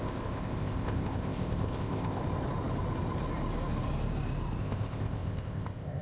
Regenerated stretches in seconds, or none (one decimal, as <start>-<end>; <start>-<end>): 0.0-2.2; 4.6-6.0